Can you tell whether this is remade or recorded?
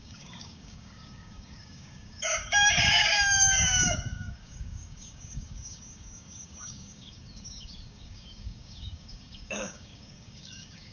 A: remade